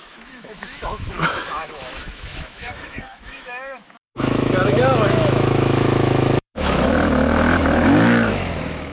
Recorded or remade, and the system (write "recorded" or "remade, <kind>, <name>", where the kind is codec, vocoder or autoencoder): remade, autoencoder, DAC-VAE